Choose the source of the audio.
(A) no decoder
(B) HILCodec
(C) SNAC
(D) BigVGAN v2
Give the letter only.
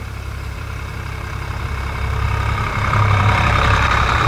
D